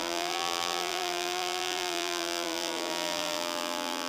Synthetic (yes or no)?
yes